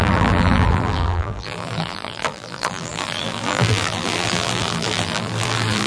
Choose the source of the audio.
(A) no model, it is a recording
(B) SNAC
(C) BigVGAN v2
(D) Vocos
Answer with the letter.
C